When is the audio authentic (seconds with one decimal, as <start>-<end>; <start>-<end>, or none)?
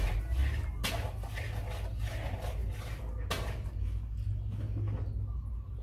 0.0-5.8